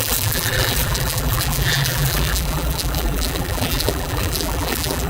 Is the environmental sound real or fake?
fake